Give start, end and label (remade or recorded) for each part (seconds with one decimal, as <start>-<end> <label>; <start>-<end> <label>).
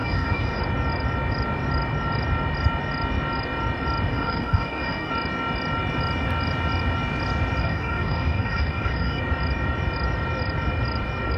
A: 0.0-0.6 remade; 0.6-4.1 recorded; 4.1-5.1 remade; 5.1-7.6 recorded; 7.6-9.2 remade; 9.2-11.4 recorded